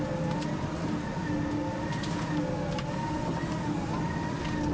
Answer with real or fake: real